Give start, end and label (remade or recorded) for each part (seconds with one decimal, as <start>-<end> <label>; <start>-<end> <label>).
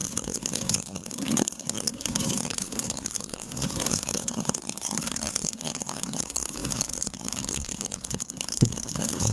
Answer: 0.0-9.3 remade